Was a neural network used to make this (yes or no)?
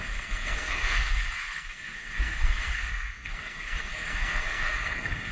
yes